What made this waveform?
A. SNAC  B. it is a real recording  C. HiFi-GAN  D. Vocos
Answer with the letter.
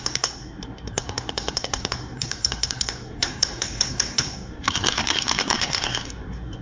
A